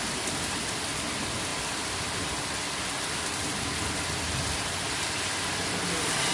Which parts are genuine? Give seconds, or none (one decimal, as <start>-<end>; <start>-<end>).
0.0-6.3